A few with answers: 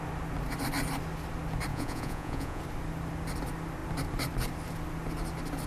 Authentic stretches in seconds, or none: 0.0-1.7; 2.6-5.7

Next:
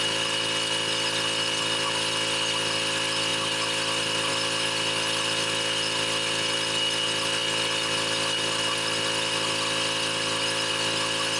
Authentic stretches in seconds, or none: 0.0-11.4

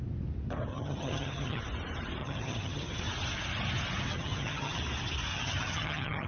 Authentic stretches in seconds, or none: 0.0-0.7; 1.6-2.2; 3.0-4.1; 4.8-5.3

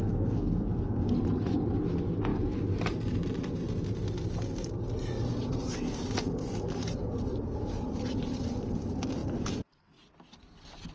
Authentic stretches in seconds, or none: 1.1-10.9

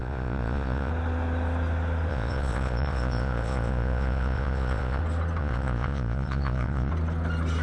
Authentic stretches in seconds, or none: 0.9-2.1; 5.0-5.4; 6.9-7.6

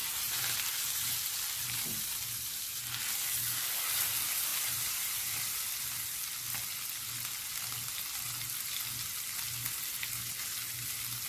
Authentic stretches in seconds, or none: 3.0-4.5; 5.6-11.3

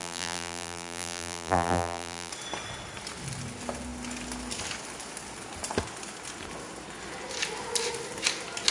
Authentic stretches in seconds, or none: 2.3-8.7